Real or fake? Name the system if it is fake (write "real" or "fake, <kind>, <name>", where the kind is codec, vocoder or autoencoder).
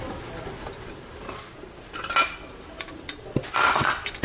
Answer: real